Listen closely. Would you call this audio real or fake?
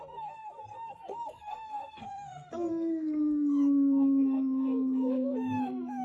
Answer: fake